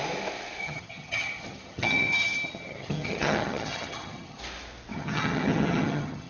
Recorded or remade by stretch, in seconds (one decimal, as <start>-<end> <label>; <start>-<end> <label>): 0.0-0.6 recorded; 0.6-4.4 remade; 4.4-4.9 recorded; 4.9-6.3 remade